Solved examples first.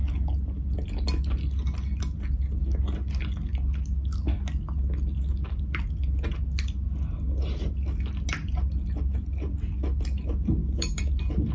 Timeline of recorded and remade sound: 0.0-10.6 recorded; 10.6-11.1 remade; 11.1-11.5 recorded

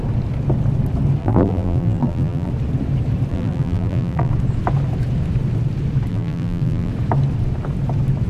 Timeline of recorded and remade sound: 0.0-1.2 recorded; 1.2-2.5 remade; 2.5-3.3 recorded; 3.3-4.3 remade; 4.3-6.1 recorded; 6.1-6.9 remade; 6.9-8.3 recorded

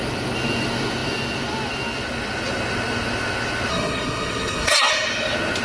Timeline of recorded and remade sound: 0.0-3.7 recorded; 3.7-4.9 remade; 4.9-5.6 recorded

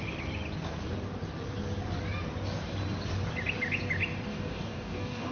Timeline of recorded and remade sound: 0.0-4.3 recorded; 4.3-5.3 remade

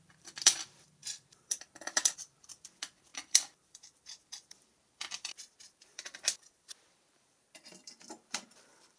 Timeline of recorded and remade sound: 0.0-9.0 remade